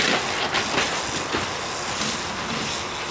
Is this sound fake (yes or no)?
no